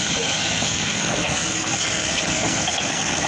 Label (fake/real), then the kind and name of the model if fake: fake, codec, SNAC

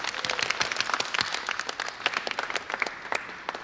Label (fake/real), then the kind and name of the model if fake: real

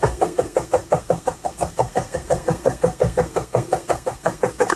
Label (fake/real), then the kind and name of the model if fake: fake, codec, SNAC